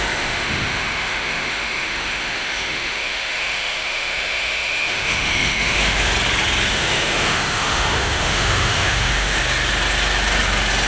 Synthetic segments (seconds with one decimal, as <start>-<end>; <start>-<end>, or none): 0.0-6.1; 6.7-9.4